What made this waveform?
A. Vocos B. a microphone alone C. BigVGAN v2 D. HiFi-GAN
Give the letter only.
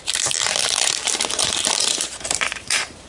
C